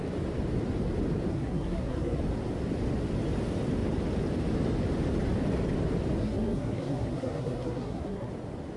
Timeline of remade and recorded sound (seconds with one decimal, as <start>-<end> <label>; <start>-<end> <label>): 0.0-1.3 recorded; 1.3-2.2 remade; 2.2-6.2 recorded; 6.2-8.3 remade; 8.3-8.8 recorded